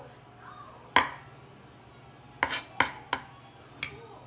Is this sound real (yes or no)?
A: yes